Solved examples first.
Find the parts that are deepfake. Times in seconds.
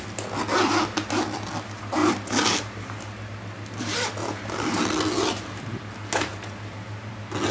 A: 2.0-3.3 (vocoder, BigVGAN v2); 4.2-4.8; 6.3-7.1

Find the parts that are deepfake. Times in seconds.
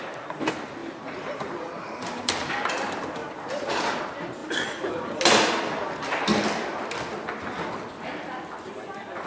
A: 0.8-2.3 (vocoder, BigVGAN v2); 3.2-4.0